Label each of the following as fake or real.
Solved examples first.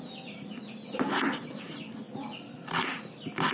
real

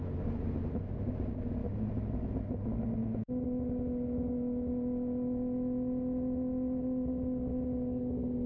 real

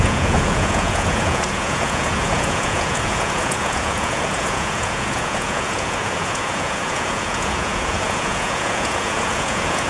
fake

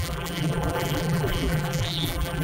fake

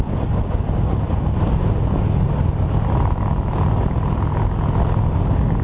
real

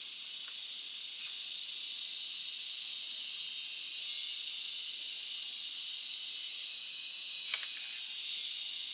real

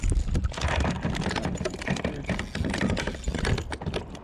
real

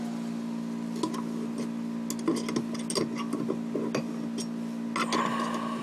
real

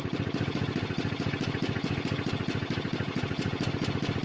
real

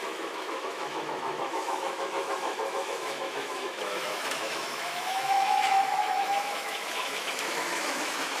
fake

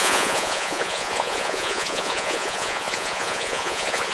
fake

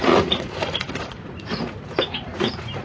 fake